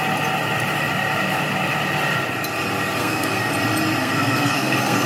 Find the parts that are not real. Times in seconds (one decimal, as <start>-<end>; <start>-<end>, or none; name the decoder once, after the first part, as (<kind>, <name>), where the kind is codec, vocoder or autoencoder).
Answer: 3.0-3.5 (codec, SNAC); 4.0-5.1

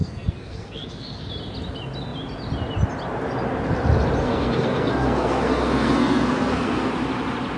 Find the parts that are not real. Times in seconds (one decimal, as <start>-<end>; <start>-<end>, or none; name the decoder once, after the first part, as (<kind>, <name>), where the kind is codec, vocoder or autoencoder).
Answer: 0.0-1.3 (codec, SNAC); 4.2-6.9

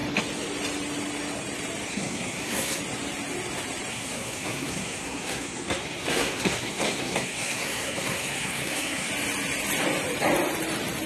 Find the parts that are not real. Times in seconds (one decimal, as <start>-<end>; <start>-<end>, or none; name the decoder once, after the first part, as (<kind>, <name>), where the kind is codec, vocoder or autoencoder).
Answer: 1.9-2.8 (codec, SNAC); 3.9-9.1